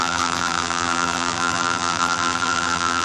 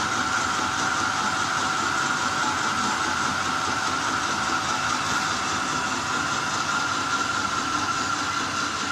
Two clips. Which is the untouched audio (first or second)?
second